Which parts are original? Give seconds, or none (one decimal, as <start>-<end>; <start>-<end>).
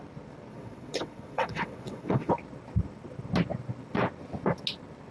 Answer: 0.0-0.5; 2.3-5.1